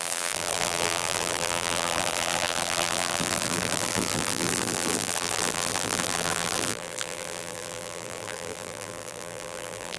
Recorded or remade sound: remade